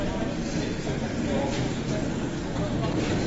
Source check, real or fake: real